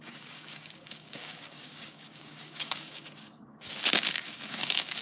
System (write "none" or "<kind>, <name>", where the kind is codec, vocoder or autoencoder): codec, DAC